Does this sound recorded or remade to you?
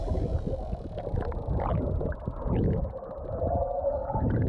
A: recorded